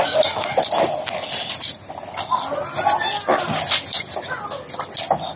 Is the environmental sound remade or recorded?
recorded